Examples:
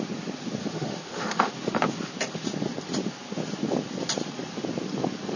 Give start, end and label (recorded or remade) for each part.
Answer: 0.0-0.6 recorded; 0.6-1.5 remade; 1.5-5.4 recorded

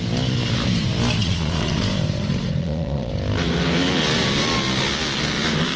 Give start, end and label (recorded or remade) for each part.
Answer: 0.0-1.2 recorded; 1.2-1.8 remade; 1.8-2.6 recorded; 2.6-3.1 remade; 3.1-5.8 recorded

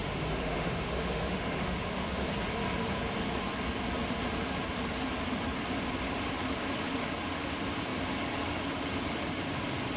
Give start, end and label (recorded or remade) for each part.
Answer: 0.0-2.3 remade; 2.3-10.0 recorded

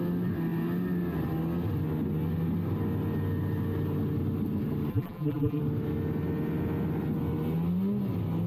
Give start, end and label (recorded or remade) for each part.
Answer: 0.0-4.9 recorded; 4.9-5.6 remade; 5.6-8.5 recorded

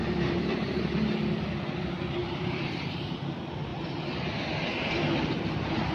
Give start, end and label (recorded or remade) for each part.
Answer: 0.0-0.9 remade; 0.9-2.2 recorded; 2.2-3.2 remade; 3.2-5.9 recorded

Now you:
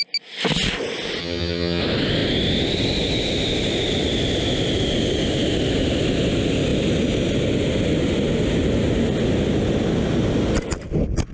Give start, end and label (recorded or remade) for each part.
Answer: 0.0-1.2 recorded; 1.2-1.8 remade; 1.8-11.3 recorded

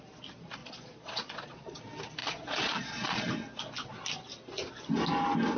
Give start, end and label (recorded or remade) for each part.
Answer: 0.0-0.6 recorded; 0.6-1.8 remade; 1.8-2.2 recorded; 2.2-3.3 remade; 3.3-5.6 recorded